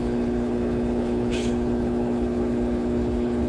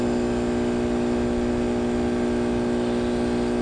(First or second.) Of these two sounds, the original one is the second